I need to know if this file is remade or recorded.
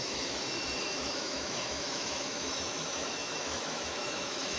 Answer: remade